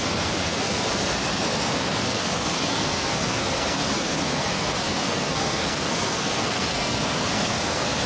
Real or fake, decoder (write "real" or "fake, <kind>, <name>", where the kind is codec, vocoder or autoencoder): fake, codec, SNAC